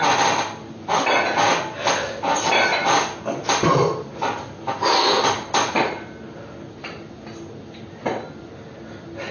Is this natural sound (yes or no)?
yes